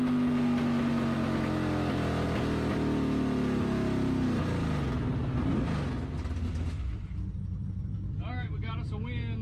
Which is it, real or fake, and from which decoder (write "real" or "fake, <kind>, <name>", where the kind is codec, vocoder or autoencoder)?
real